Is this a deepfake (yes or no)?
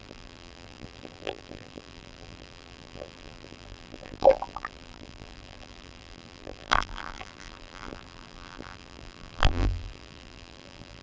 yes